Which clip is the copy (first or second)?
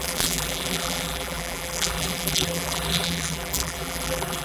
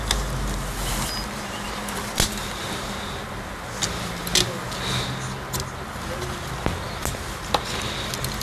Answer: first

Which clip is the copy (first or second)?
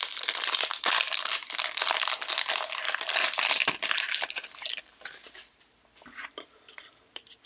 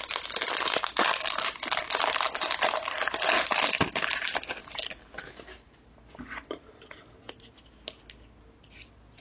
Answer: first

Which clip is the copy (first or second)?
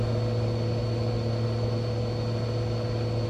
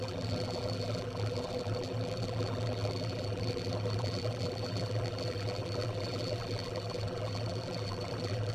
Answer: second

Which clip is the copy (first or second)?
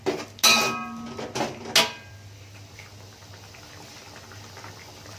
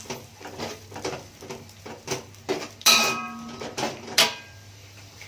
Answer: second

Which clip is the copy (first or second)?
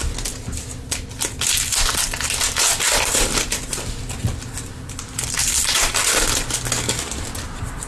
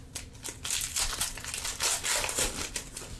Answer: second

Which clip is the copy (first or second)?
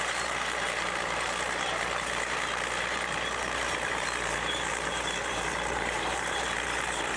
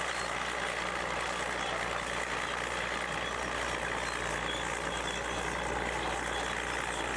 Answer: first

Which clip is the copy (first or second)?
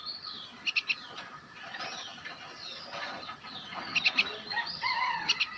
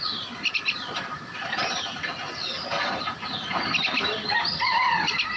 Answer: second